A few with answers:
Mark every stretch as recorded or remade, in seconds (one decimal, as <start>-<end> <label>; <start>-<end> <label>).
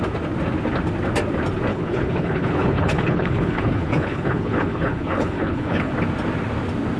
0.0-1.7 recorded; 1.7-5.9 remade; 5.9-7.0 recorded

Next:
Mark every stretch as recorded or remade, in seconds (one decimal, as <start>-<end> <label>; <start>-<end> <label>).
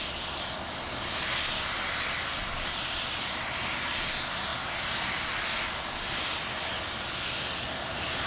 0.0-8.3 recorded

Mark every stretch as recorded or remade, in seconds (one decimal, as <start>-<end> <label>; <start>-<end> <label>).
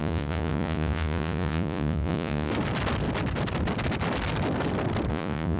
0.0-2.5 remade; 2.5-5.1 recorded; 5.1-5.6 remade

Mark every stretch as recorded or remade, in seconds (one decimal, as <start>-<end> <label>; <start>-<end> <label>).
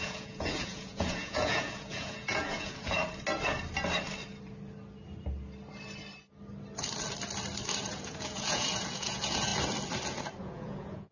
0.0-3.0 remade; 3.0-7.8 recorded; 7.8-9.5 remade; 9.5-10.4 recorded; 10.4-11.1 remade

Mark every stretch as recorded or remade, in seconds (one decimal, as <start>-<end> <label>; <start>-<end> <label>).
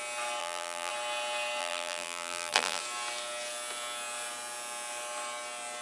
0.0-0.4 recorded; 0.4-0.9 remade; 0.9-1.6 recorded; 1.6-2.8 remade; 2.8-5.8 recorded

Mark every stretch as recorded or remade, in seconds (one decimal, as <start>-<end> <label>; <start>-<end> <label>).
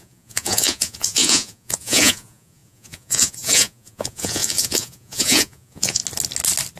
0.0-6.0 remade; 6.0-6.8 recorded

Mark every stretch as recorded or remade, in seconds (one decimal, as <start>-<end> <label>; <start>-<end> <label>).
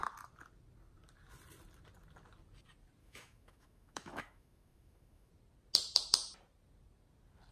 0.0-3.0 recorded; 3.0-5.3 remade; 5.3-7.5 recorded